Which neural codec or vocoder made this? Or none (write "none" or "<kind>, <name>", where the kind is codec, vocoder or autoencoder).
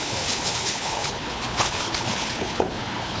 codec, HILCodec